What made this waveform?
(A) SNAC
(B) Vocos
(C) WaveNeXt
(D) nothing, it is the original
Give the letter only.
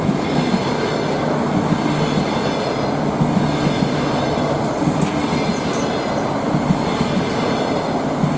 D